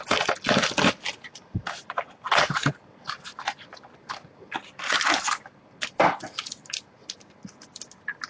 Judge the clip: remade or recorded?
recorded